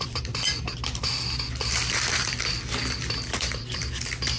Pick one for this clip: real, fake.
fake